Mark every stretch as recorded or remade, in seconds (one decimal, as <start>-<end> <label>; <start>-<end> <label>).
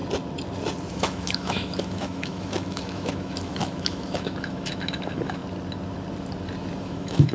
0.0-0.9 recorded; 0.9-5.4 remade; 5.4-6.8 recorded; 6.8-7.3 remade